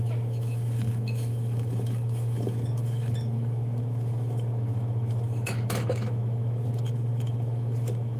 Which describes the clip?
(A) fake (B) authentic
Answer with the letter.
A